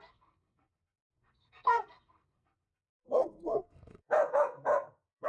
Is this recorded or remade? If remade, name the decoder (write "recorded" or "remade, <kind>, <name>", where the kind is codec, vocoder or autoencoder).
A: remade, codec, SNAC